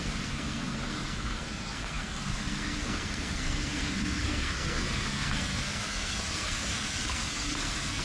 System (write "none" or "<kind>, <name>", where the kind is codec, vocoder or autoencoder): codec, SNAC